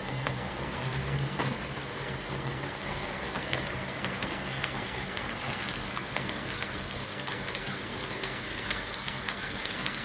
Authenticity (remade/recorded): remade